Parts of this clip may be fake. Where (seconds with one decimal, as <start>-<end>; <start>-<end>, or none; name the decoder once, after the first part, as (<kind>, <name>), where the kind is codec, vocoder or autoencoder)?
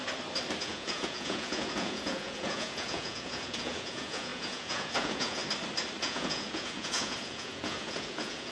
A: 0.6-5.4 (vocoder, Vocos); 6.0-8.5